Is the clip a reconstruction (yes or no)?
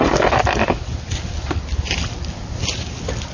no